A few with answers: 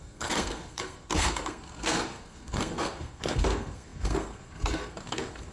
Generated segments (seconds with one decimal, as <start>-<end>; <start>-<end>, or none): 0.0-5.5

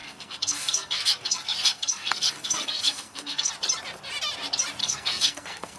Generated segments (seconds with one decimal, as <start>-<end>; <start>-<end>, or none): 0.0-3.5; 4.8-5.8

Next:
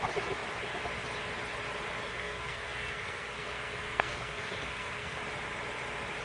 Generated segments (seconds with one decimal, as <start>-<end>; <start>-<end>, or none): 2.1-5.2

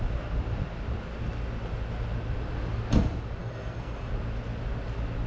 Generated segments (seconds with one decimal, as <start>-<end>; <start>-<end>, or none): 3.4-4.1